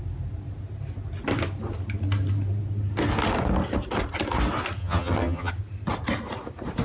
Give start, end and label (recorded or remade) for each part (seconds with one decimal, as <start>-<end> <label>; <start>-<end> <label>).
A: 0.0-4.8 recorded; 4.8-5.5 remade; 5.5-6.8 recorded